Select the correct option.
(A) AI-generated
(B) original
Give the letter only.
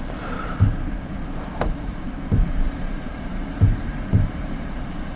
A